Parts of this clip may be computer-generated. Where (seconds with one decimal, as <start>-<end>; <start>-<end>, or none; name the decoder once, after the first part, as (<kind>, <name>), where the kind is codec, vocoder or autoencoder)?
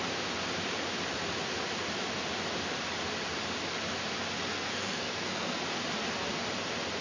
4.5-5.6 (codec, SNAC)